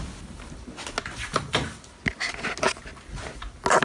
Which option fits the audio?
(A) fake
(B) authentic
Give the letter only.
B